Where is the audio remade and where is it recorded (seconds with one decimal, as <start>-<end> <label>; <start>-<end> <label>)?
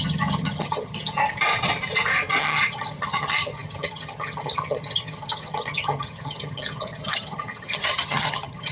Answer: 0.0-1.2 remade; 1.2-2.4 recorded; 2.4-8.7 remade